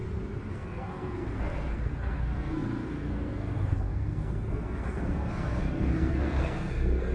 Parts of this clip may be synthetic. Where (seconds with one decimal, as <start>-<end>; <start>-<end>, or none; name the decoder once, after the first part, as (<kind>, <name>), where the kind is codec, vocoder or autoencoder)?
0.5-7.1 (codec, SNAC)